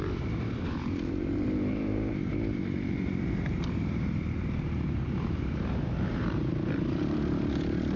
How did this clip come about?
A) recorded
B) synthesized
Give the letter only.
B